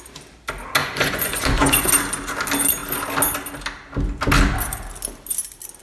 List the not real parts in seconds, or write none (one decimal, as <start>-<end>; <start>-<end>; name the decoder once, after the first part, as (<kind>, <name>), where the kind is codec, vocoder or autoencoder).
0.8-1.9 (vocoder, Vocos)